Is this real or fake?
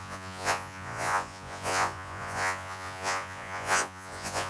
fake